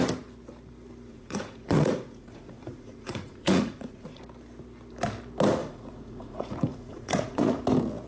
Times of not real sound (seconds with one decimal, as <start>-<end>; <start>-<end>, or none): 1.1-4.2; 5.6-7.6